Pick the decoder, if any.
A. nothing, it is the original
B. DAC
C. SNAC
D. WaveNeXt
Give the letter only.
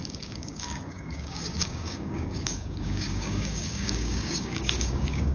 B